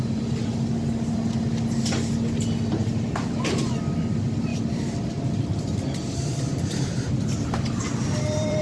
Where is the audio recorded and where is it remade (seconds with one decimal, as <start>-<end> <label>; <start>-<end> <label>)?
0.0-2.8 recorded; 2.8-3.4 remade; 3.4-4.5 recorded; 4.5-8.6 remade